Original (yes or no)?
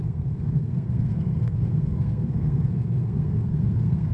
no